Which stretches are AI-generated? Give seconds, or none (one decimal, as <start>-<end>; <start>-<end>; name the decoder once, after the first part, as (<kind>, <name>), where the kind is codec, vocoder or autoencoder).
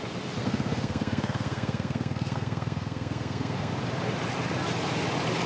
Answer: 0.4-3.7 (codec, SNAC)